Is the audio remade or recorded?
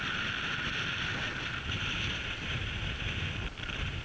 recorded